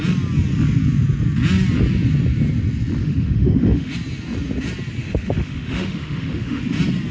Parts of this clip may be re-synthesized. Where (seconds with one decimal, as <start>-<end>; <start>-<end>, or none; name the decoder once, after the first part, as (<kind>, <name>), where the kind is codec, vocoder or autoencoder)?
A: 3.0-3.9 (autoencoder, DAC-VAE); 5.0-6.6